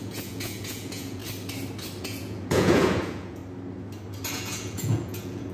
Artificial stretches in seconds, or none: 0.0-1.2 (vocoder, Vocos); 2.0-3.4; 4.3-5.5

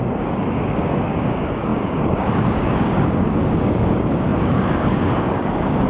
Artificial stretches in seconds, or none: 0.0-5.9 (codec, DAC)

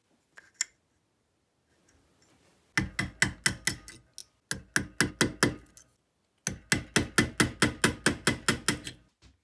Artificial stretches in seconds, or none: none

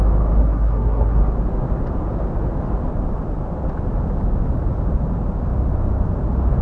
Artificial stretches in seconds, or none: 0.4-1.2 (codec, SNAC)

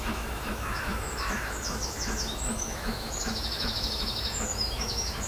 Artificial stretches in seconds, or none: 0.0-5.3 (autoencoder, DAC-VAE)